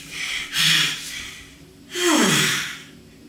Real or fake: fake